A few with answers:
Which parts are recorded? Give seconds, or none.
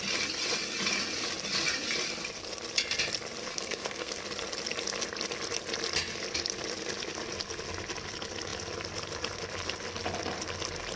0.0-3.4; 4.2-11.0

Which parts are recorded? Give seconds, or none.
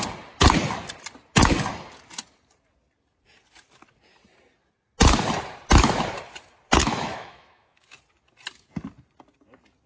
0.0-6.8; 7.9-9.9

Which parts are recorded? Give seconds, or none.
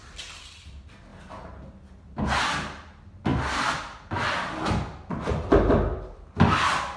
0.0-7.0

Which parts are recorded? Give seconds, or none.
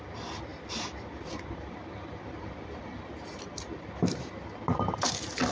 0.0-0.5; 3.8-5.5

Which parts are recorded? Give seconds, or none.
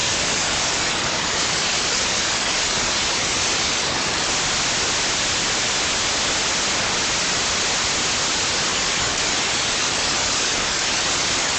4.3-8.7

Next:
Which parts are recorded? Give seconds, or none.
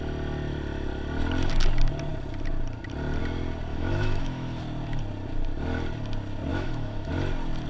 0.0-3.7; 4.6-6.5; 7.1-7.7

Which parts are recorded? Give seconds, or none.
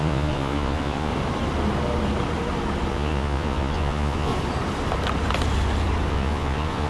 1.1-2.9; 4.3-6.1